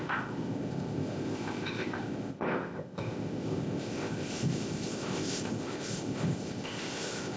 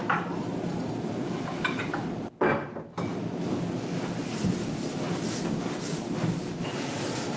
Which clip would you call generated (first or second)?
first